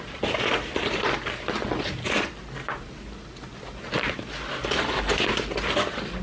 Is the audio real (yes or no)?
yes